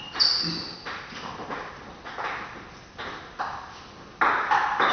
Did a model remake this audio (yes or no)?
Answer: no